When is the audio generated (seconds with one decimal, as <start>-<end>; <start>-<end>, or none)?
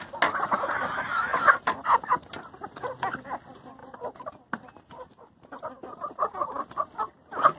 none